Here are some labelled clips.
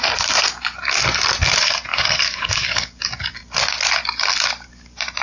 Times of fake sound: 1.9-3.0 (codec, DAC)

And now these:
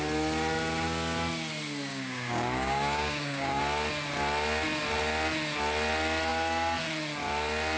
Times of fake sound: 1.9-3.6 (codec, DAC)

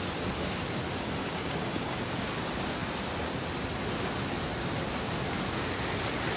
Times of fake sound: 1.2-2.0 (codec, DAC)

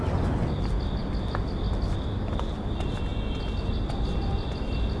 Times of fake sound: none

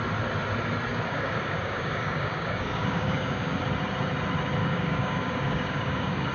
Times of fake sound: 0.9-3.6 (codec, DAC); 4.6-6.3

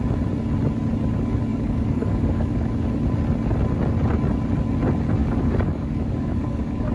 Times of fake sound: 1.5-2.7 (codec, DAC); 5.2-6.9

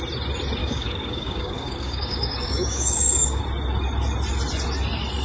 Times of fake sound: 0.6-3.4 (codec, DAC)